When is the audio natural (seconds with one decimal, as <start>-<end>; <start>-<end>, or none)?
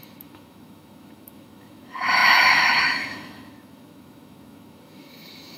none